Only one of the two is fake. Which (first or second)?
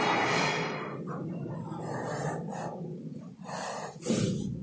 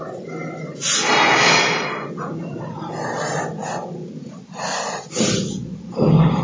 first